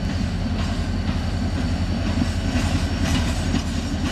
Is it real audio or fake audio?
real